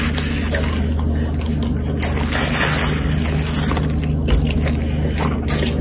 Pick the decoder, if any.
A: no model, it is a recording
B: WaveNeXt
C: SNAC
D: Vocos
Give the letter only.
A